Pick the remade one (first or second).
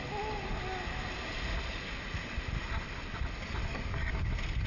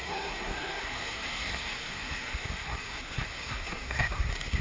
second